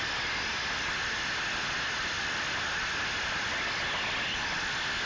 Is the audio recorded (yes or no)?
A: yes